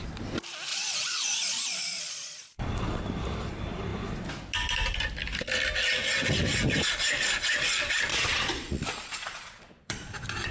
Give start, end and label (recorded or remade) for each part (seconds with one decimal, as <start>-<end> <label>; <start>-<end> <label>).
0.0-0.7 recorded; 0.7-3.0 remade; 3.0-8.1 recorded; 8.1-10.5 remade